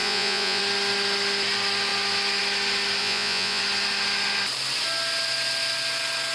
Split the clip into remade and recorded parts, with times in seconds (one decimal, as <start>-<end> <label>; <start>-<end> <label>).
0.0-0.6 remade; 0.6-3.0 recorded; 3.0-3.6 remade; 3.6-6.3 recorded